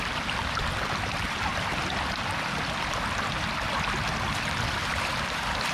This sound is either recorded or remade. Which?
recorded